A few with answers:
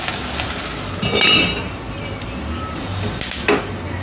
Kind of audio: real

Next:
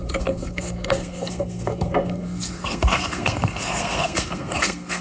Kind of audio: fake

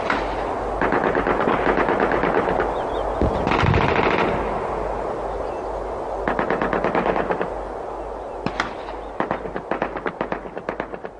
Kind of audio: real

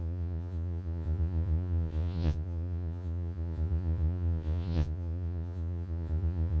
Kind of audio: fake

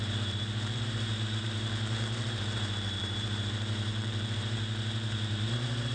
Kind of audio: fake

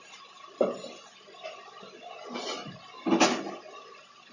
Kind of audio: real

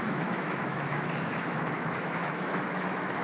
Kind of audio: fake